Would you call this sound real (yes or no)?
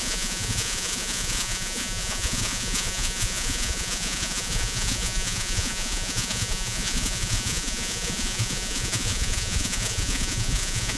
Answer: no